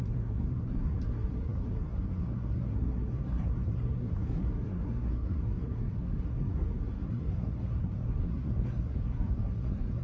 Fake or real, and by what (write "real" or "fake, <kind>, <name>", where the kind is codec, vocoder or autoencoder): fake, codec, SNAC